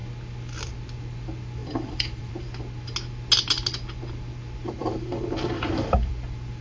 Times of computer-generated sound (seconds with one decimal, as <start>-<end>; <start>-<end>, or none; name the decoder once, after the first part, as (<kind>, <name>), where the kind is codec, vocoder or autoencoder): 1.6-2.3 (vocoder, BigVGAN v2); 4.8-6.1